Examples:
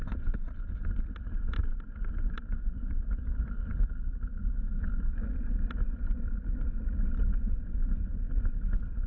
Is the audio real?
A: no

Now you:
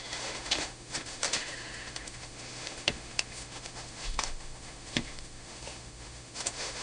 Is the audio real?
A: no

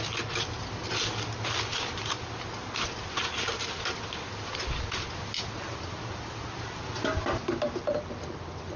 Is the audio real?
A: yes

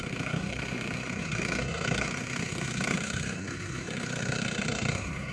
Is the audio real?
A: no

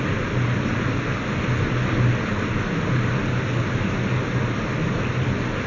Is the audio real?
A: yes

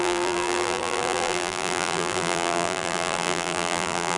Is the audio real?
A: no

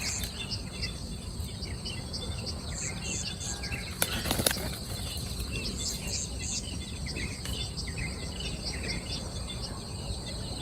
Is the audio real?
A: yes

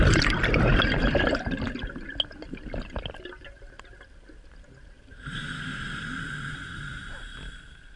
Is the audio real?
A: yes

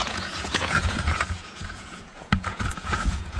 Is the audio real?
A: no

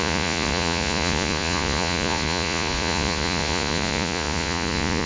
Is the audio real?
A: no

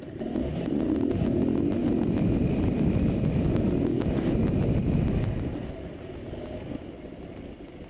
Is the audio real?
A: yes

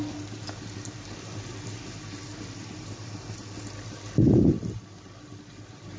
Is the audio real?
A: yes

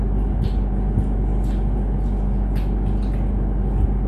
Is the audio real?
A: yes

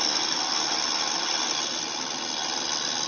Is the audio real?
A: yes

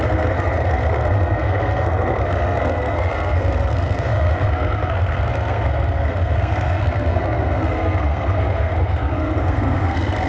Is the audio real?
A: no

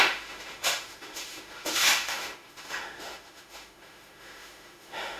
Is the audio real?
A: no